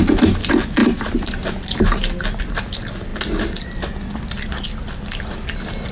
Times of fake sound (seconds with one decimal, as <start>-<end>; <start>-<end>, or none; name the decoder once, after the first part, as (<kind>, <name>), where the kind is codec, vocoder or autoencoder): none

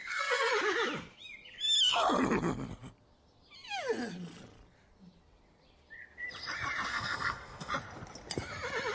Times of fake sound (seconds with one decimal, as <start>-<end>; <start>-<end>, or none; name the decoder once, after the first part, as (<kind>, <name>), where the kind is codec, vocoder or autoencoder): 0.0-0.5 (codec, SNAC); 6.9-7.7

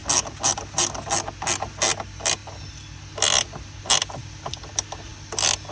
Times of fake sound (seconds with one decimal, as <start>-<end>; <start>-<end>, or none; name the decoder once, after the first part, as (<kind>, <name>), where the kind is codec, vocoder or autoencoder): none